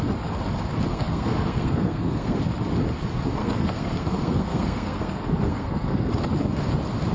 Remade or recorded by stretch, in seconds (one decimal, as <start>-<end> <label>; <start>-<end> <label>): 0.0-0.9 recorded; 0.9-2.4 remade; 2.4-3.4 recorded; 3.4-6.2 remade; 6.2-7.1 recorded